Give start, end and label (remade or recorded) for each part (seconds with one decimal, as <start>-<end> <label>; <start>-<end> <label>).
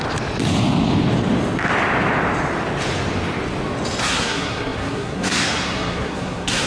0.0-4.0 recorded; 4.0-6.7 remade